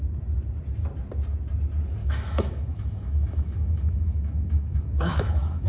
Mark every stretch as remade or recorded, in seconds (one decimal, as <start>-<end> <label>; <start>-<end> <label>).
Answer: 0.0-2.0 recorded; 2.0-5.7 remade